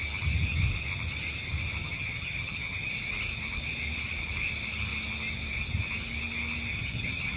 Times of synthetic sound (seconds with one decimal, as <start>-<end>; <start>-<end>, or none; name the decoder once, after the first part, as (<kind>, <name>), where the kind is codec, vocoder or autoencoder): 1.8-2.9 (vocoder, HiFi-GAN); 6.7-7.4